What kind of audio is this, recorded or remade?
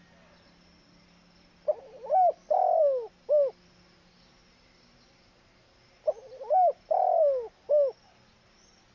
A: recorded